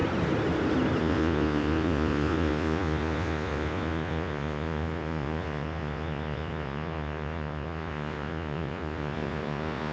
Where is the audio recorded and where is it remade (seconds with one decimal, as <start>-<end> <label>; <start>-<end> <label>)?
0.0-1.0 recorded; 1.0-9.9 remade